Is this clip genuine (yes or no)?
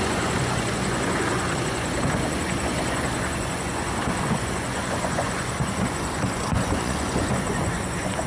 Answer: no